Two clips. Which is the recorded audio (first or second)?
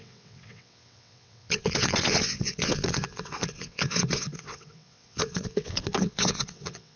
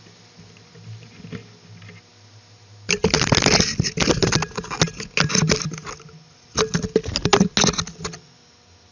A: second